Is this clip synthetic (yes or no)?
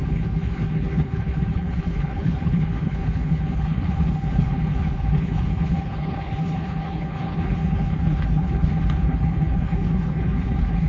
yes